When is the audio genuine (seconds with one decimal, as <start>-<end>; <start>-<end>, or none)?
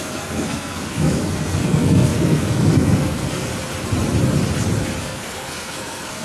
3.5-5.0